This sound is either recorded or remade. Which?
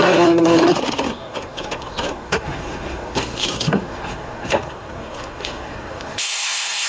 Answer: remade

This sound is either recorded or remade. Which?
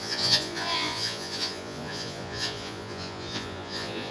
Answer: remade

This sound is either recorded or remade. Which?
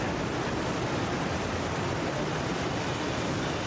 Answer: remade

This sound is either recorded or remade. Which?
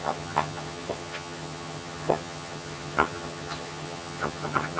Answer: remade